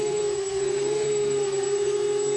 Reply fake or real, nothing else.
fake